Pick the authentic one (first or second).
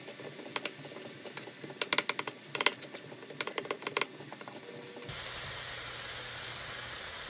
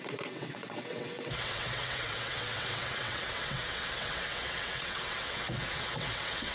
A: first